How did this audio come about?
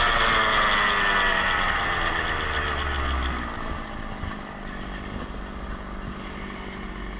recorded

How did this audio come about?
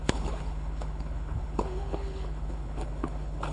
remade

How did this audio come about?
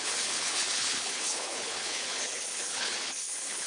remade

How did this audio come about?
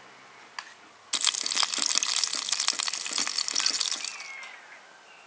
recorded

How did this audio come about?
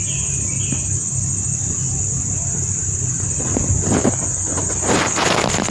recorded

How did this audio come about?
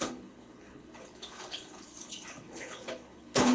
remade